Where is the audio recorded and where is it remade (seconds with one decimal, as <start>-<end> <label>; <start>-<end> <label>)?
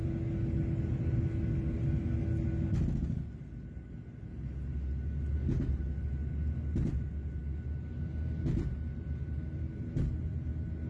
0.0-10.9 recorded